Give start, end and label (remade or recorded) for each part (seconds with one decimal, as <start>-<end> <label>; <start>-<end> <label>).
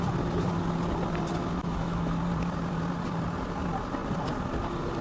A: 0.0-1.6 recorded; 1.6-2.1 remade; 2.1-5.0 recorded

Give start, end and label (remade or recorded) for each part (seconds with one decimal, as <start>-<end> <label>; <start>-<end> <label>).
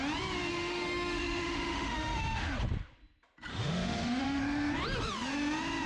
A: 0.0-0.5 recorded; 0.5-2.5 remade; 2.5-3.5 recorded; 3.5-4.4 remade; 4.4-5.9 recorded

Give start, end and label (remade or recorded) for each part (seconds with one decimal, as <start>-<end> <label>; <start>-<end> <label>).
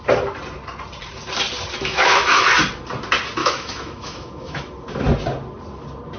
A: 0.0-1.8 recorded; 1.8-2.5 remade; 2.5-3.4 recorded; 3.4-4.6 remade; 4.6-6.2 recorded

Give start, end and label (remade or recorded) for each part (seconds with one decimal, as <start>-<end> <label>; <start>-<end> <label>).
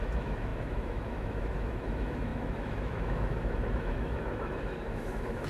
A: 0.0-5.5 remade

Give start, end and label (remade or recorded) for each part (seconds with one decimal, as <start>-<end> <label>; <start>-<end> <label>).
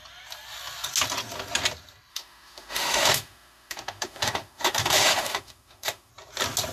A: 0.0-2.1 recorded; 2.1-6.1 remade; 6.1-6.7 recorded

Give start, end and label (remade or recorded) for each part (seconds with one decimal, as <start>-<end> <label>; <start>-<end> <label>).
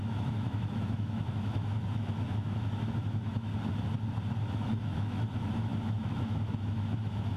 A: 0.0-3.5 remade; 3.5-4.4 recorded; 4.4-7.4 remade